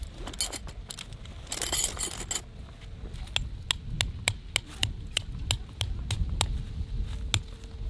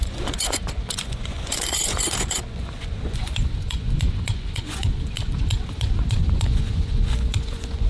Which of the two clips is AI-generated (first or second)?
second